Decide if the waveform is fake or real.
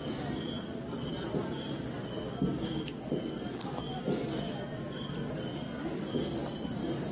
real